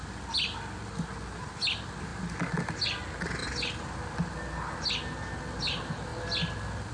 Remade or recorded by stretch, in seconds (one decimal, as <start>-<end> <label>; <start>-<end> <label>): 0.0-6.9 recorded